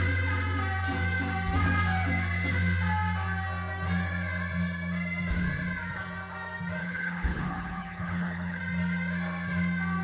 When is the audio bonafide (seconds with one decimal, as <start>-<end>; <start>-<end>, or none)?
0.0-6.8; 8.6-10.0

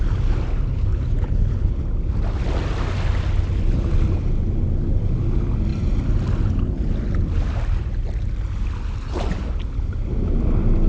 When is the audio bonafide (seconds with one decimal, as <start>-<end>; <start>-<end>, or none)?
0.0-0.7; 1.8-10.9

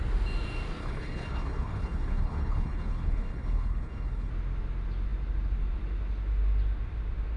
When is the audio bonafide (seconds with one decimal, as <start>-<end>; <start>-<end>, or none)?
0.0-0.8; 4.3-7.4